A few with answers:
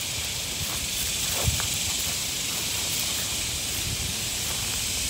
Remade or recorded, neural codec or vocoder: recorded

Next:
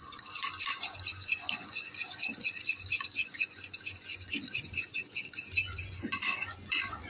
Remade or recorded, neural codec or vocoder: remade, vocoder, Vocos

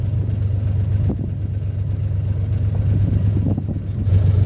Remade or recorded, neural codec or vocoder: recorded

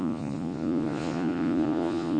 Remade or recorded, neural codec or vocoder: remade, vocoder, Vocos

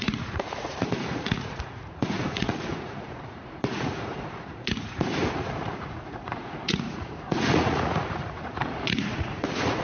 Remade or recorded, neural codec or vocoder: remade, vocoder, Vocos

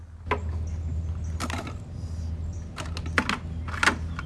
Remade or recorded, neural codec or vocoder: recorded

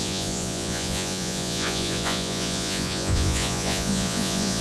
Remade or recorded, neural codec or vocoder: remade, vocoder, Vocos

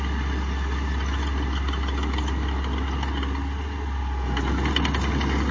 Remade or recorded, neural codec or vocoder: recorded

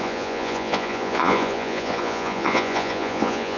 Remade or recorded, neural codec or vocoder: remade, vocoder, Vocos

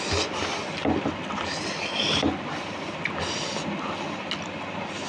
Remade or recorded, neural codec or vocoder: recorded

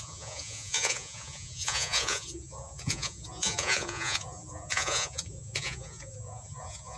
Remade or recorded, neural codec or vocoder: remade, vocoder, Vocos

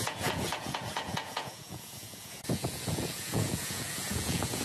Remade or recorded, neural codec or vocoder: remade, vocoder, Vocos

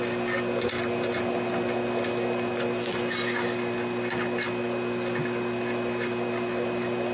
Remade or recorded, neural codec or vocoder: recorded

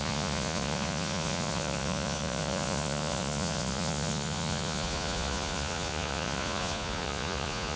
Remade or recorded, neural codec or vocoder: remade, vocoder, Vocos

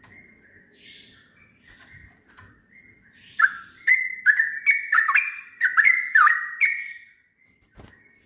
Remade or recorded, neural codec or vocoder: recorded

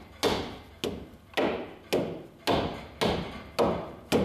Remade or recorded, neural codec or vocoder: recorded